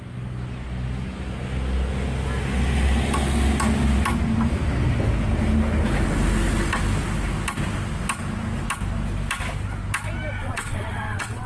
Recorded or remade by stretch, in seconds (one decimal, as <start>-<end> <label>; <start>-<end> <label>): 0.0-10.4 recorded; 10.4-11.5 remade